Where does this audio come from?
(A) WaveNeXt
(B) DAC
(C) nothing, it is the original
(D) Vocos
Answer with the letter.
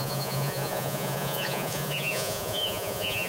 D